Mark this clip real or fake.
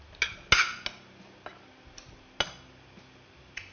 real